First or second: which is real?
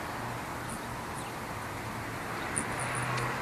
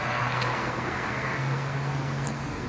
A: first